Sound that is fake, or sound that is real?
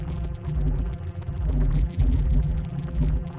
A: fake